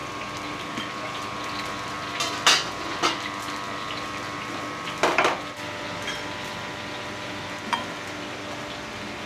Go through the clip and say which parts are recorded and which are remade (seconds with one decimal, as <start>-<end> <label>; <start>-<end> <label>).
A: 0.0-9.3 recorded